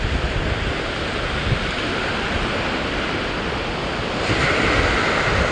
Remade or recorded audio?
recorded